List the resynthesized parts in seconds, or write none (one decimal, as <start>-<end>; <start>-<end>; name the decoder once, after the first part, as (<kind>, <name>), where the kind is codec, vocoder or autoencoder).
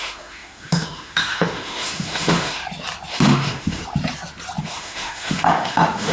0.0-2.6 (autoencoder, DAC-VAE); 3.1-3.8; 4.6-6.1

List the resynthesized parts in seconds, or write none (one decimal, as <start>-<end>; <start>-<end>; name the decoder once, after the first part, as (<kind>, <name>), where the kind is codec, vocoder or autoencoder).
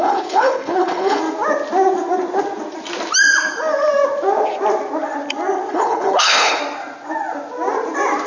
0.0-1.2 (codec, HILCodec); 5.7-6.6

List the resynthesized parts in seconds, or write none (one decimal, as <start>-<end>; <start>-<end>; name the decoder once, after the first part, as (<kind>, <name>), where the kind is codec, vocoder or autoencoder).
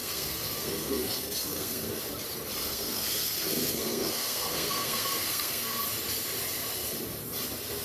0.0-2.0 (codec, SNAC); 2.6-5.8